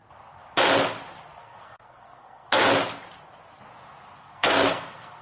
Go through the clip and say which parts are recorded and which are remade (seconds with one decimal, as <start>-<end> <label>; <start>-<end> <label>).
0.0-1.4 recorded; 1.4-2.6 remade; 2.6-4.2 recorded; 4.2-5.2 remade